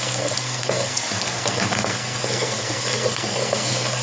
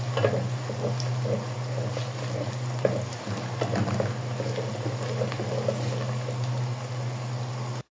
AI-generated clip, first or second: first